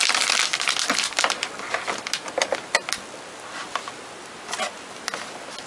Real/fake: real